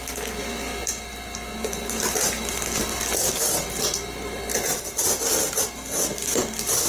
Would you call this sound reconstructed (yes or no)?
no